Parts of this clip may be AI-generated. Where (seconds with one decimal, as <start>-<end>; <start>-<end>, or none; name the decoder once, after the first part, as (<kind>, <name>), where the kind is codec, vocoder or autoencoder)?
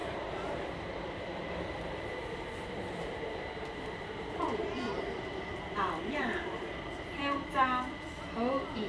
0.0-8.9 (vocoder, BigVGAN v2)